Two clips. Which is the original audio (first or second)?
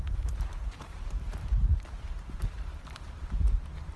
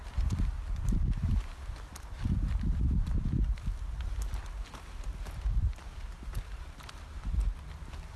second